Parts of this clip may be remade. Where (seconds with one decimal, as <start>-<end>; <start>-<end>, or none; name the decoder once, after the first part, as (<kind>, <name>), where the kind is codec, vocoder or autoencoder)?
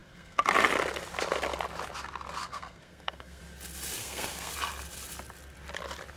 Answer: 0.0-0.5 (codec, SNAC); 2.4-3.4; 4.0-4.5